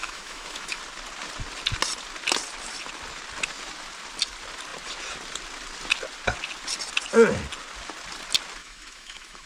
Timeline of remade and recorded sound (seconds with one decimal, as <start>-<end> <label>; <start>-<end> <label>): 0.0-0.8 remade; 0.8-8.6 recorded; 8.6-9.5 remade